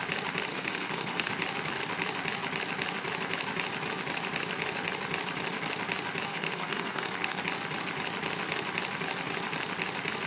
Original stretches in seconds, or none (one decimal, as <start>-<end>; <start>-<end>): 0.0-0.5; 1.3-6.3; 7.4-10.3